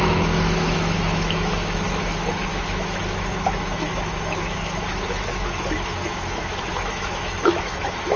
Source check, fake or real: fake